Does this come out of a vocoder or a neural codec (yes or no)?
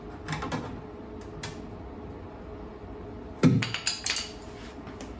no